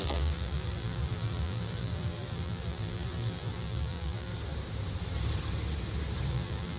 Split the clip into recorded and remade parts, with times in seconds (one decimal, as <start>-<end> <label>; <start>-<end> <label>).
0.0-4.3 remade; 4.3-6.3 recorded; 6.3-6.8 remade